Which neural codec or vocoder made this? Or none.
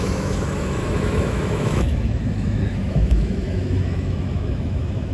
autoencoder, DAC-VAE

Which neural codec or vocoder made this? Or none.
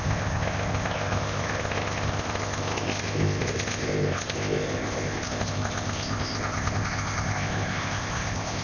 codec, ZipCodec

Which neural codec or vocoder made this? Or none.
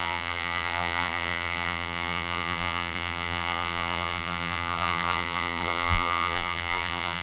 vocoder, BigVGAN v2